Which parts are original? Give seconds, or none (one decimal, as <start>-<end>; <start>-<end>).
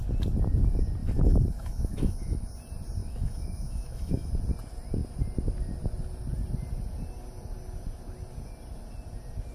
0.0-1.0; 2.5-3.0; 4.3-9.5